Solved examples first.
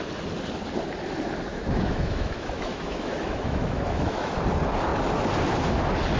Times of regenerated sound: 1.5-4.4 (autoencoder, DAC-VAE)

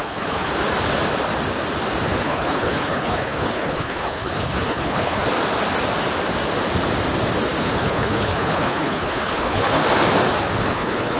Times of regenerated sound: 0.0-0.5 (codec, HILCodec); 2.2-5.2; 7.6-9.8; 10.6-11.2